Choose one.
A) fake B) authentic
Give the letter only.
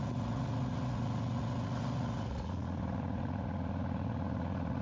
A